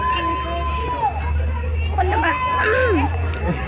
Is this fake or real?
real